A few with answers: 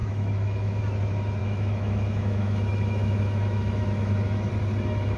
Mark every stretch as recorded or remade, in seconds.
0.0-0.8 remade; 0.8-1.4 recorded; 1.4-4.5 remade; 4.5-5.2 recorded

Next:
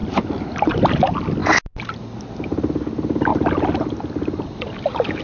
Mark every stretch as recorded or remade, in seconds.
0.0-5.2 recorded

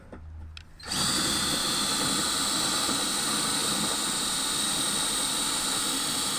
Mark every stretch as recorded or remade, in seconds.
0.0-6.4 recorded